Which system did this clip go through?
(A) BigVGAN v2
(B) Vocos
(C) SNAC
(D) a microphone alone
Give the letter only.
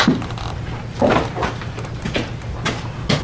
D